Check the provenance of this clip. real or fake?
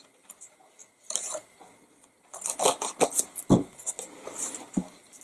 real